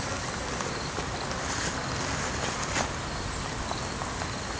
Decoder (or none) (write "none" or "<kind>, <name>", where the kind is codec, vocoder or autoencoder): none